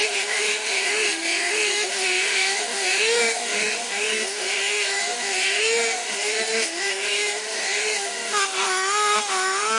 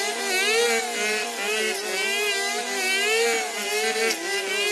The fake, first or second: first